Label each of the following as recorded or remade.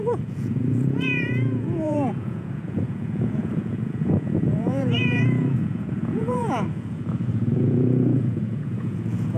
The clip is remade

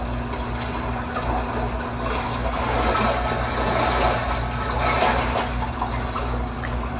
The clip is recorded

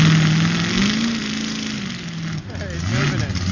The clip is recorded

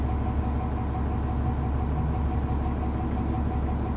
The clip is recorded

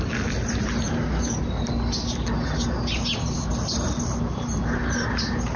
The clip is recorded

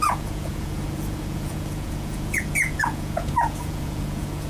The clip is remade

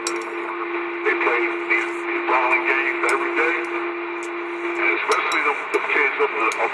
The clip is recorded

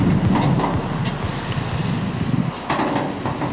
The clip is recorded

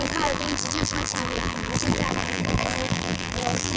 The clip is remade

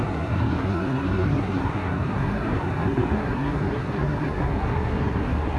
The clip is remade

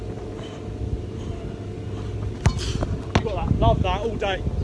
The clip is recorded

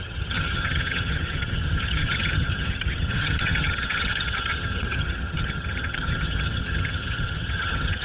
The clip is remade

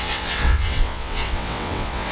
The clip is remade